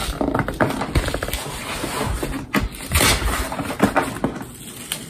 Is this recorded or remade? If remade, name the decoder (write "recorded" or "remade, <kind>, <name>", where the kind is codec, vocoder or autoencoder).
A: recorded